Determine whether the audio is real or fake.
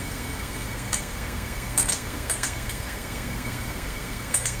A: fake